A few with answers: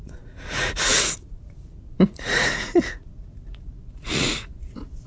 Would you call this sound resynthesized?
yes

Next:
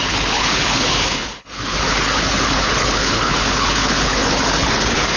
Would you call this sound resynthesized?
yes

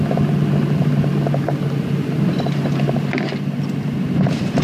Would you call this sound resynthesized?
no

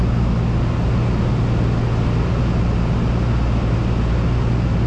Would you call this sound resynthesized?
no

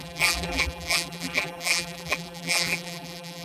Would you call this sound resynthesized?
yes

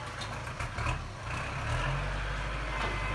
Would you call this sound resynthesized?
no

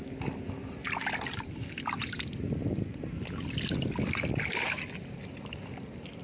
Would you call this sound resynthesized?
no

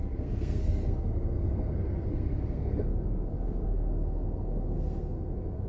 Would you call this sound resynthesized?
yes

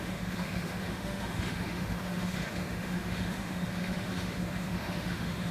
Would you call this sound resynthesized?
yes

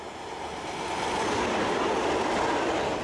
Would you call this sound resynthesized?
no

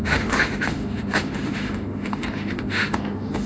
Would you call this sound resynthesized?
yes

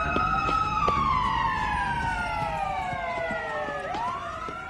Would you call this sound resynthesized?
yes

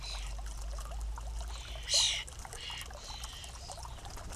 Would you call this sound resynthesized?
no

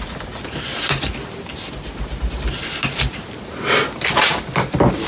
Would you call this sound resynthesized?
no